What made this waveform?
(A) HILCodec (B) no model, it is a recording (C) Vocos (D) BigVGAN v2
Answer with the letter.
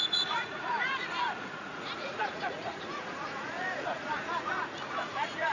C